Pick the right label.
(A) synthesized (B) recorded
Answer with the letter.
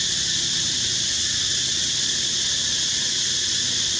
B